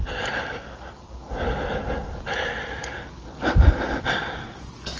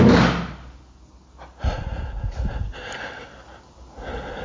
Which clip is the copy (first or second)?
first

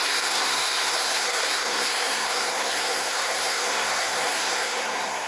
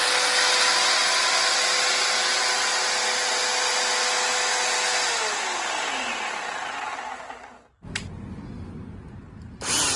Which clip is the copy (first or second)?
first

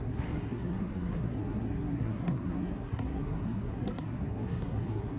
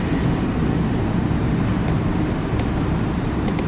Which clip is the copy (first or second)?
first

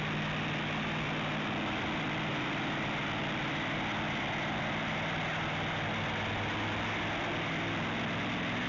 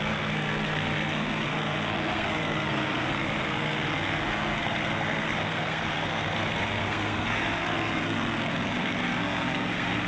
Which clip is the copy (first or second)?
second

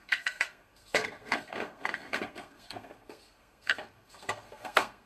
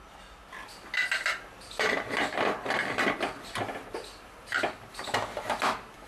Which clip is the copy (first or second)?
first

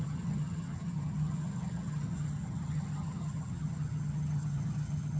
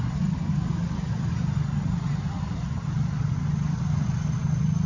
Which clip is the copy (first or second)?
first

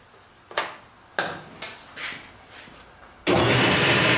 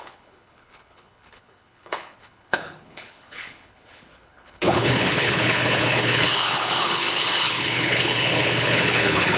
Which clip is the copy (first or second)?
second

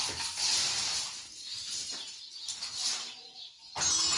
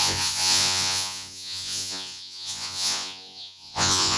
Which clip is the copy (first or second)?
second